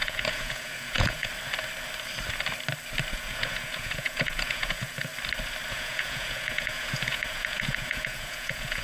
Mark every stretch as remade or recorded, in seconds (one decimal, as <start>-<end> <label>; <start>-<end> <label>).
0.0-1.3 remade; 1.3-3.1 recorded; 3.1-5.1 remade; 5.1-5.7 recorded; 5.7-8.8 remade